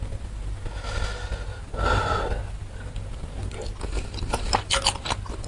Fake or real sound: real